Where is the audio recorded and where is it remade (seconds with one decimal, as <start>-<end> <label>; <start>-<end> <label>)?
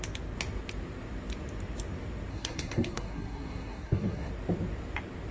0.0-2.3 recorded; 2.3-4.3 remade; 4.3-5.3 recorded